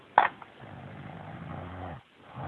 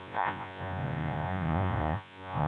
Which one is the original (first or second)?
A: first